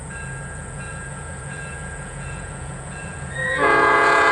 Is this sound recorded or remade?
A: remade